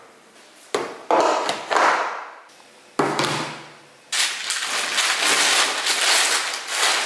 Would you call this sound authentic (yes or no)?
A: yes